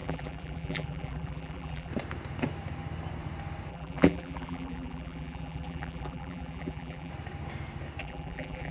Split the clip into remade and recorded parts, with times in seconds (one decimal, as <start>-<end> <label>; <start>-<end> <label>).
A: 0.0-1.9 remade; 1.9-3.7 recorded; 3.7-7.1 remade; 7.1-8.0 recorded; 8.0-8.7 remade